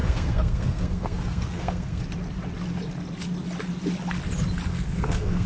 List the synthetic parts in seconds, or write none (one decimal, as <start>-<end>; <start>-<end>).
0.0-2.0; 4.7-5.5